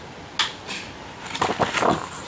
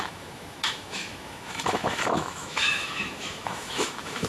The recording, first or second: first